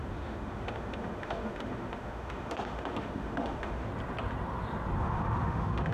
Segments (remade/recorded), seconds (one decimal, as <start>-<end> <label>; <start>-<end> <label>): 0.0-3.9 remade; 3.9-5.0 recorded; 5.0-5.9 remade

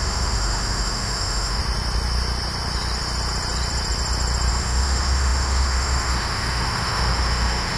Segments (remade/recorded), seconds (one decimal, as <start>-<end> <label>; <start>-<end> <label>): 0.0-1.6 remade; 1.6-4.5 recorded; 4.5-7.8 remade

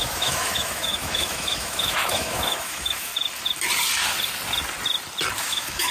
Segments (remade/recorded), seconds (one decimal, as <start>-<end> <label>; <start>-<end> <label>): 0.0-3.1 remade; 3.1-5.4 recorded; 5.4-5.9 remade

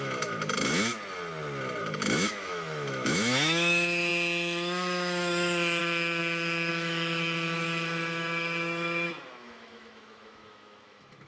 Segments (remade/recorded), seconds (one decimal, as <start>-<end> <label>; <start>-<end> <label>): 0.0-0.9 remade; 0.9-1.8 recorded; 1.8-11.3 remade

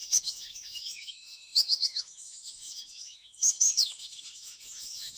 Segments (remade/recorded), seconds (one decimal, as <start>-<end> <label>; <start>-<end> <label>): 0.0-5.2 remade

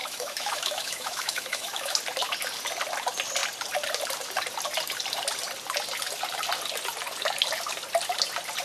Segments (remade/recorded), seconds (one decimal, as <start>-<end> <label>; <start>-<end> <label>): 0.0-2.0 remade; 2.0-8.6 recorded

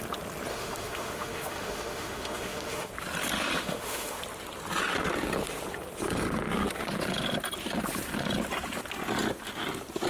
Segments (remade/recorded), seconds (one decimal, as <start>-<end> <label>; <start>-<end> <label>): 0.0-0.5 recorded; 0.5-2.9 remade; 2.9-3.6 recorded; 3.6-4.2 remade; 4.2-10.1 recorded